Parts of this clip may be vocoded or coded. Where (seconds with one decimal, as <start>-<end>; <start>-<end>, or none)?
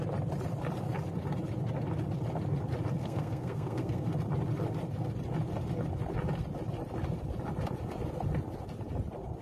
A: 3.0-4.1